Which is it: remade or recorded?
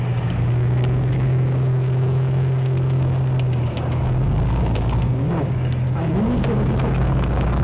remade